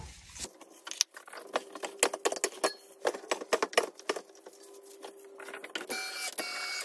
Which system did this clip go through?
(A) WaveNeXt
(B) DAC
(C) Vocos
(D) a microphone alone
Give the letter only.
D